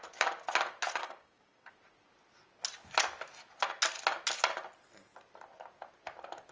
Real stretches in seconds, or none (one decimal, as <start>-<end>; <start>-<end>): 0.0-1.0; 1.7-6.5